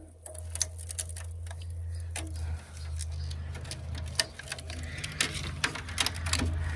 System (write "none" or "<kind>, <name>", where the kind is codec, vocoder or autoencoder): none